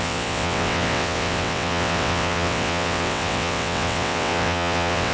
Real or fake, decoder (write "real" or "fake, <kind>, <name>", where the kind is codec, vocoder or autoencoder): fake, vocoder, WaveNeXt